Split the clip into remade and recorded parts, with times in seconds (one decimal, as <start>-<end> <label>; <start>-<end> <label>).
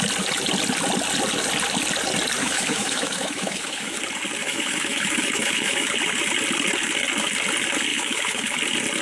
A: 0.0-2.4 recorded; 2.4-4.0 remade; 4.0-4.4 recorded; 4.4-5.9 remade; 5.9-7.9 recorded; 7.9-8.6 remade; 8.6-9.0 recorded